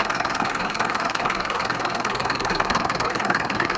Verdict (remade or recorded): remade